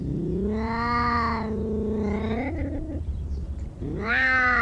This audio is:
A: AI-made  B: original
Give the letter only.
A